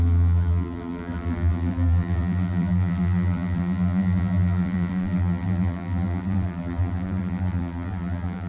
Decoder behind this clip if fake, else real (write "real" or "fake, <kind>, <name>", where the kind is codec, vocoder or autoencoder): fake, vocoder, BigVGAN v2